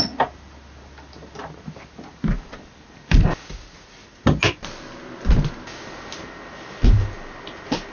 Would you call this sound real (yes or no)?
yes